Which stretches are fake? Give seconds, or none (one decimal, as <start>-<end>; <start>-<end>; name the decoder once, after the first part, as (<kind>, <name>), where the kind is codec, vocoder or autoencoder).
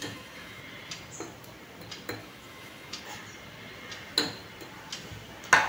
0.0-0.6 (autoencoder, DAC-VAE); 2.2-3.0